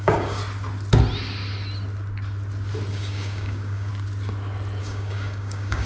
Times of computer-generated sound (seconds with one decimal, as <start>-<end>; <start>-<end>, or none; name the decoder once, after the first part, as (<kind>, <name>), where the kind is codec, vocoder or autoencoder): 0.0-0.4 (codec, DAC); 2.9-3.9; 4.8-5.9